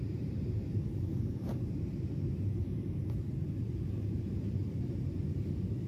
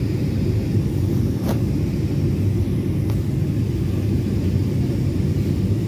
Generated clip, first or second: first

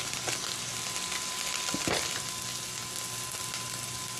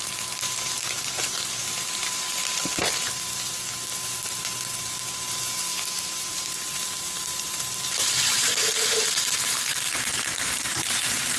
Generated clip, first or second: second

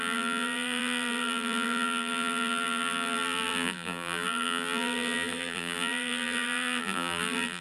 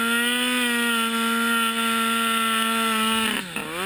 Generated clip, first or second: first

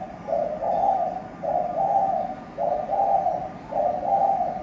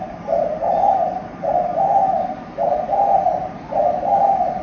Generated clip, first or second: second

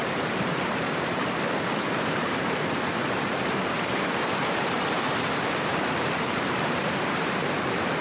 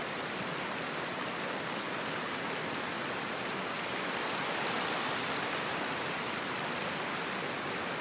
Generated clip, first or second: first